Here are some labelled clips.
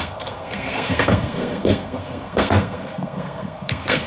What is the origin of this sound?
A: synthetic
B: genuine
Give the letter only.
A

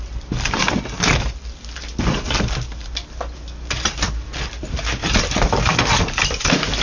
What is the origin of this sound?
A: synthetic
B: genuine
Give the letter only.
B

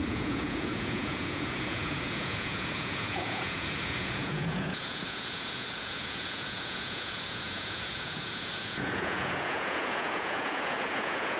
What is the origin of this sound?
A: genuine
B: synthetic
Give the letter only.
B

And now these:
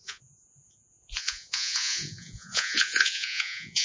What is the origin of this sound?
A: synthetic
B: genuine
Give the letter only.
A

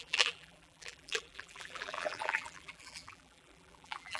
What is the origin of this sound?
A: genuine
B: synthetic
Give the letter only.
B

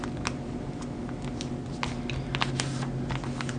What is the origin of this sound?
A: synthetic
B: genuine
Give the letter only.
B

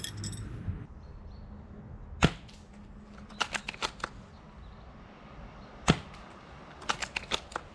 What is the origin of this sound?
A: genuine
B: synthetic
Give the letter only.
A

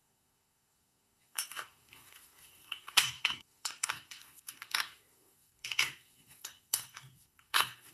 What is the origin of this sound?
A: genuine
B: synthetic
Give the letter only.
B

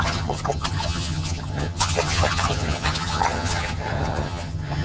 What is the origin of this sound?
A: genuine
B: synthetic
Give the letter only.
B